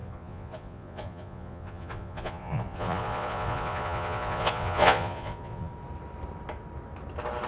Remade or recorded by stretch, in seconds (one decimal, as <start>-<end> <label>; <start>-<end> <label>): 0.0-5.7 remade; 5.7-7.5 recorded